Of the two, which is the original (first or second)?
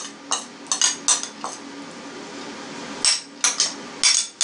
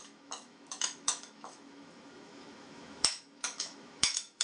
first